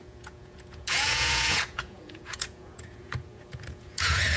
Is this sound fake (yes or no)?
yes